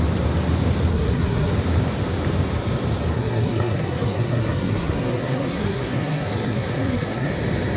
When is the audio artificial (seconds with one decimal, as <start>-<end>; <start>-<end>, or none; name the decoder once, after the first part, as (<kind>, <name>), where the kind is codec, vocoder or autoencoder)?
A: 0.9-1.5 (codec, SNAC); 3.1-7.3